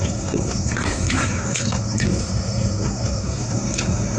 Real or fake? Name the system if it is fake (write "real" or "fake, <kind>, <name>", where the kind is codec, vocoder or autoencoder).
fake, codec, SNAC